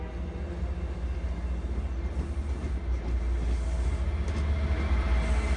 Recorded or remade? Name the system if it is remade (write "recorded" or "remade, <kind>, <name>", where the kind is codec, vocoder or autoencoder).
recorded